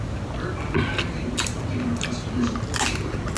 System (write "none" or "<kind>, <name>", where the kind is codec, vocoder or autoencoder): none